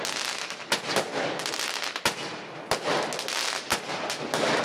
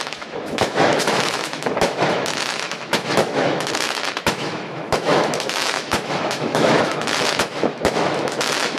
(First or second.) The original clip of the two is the first